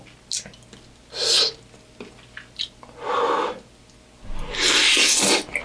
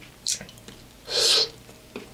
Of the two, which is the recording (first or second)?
first